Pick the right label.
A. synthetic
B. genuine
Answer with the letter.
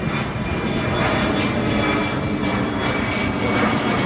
B